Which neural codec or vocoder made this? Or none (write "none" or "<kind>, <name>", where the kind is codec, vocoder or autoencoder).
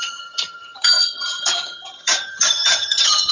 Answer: vocoder, HiFi-GAN